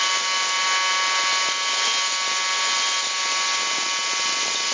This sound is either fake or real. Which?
real